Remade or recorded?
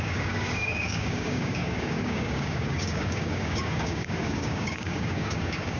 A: remade